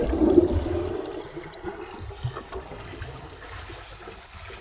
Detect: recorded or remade recorded